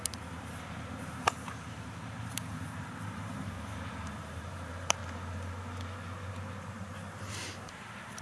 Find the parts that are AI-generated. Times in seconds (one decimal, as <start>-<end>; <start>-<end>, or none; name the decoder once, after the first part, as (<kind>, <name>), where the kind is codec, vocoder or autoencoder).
0.0-5.0 (vocoder, BigVGAN v2); 7.3-8.2